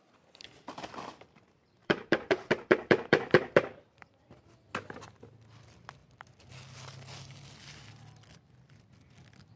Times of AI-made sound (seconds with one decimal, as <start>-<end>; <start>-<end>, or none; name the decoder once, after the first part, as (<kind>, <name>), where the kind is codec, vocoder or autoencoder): 1.8-4.2 (vocoder, BigVGAN v2)